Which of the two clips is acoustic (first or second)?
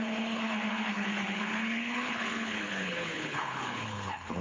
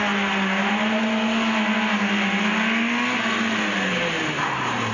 second